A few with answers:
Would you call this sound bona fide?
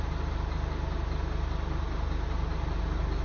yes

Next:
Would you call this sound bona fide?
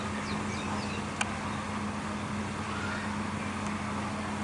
yes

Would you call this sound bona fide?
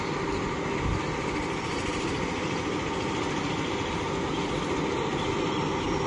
yes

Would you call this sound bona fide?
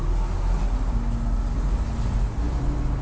yes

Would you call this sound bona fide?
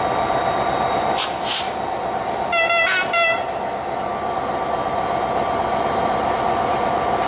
yes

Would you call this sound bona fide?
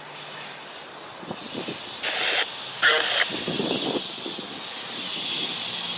yes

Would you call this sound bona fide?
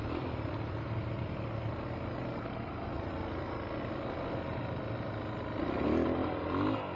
yes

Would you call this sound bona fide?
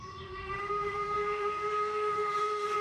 no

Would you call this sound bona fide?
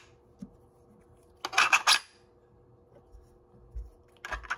yes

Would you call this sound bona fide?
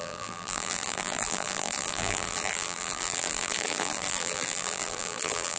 no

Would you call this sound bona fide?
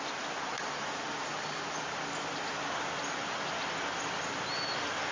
yes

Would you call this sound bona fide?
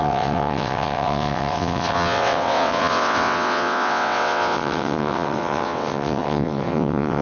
no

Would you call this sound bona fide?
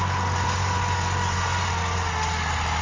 yes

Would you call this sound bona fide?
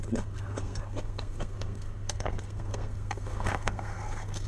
no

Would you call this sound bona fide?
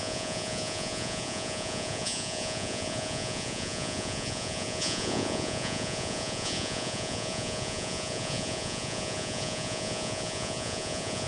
no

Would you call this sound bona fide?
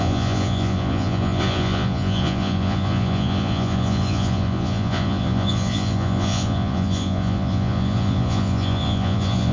no